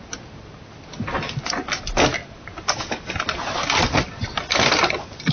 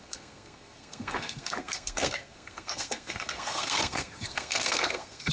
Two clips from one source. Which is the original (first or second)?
first